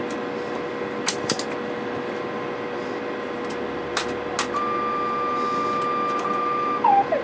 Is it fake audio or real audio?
real